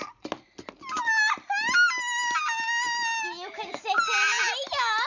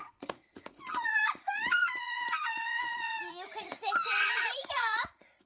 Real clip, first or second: first